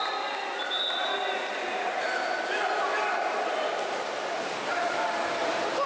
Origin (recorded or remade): recorded